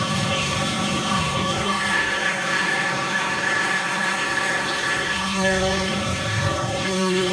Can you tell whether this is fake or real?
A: fake